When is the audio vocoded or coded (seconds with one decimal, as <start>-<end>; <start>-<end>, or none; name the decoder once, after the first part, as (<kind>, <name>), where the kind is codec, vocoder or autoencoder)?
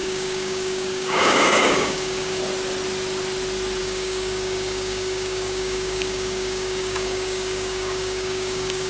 0.0-2.4 (codec, DAC); 3.8-8.9